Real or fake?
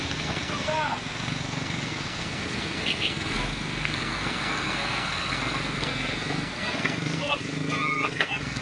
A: fake